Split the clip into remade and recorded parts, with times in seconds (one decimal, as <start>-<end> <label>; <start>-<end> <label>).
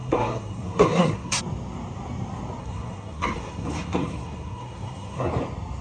0.0-1.4 remade; 1.4-2.6 recorded; 2.6-5.3 remade; 5.3-5.8 recorded